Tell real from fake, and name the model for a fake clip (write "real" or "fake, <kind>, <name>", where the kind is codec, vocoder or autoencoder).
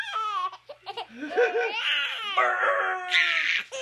real